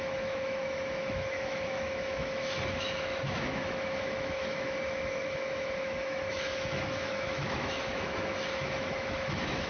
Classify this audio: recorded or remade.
remade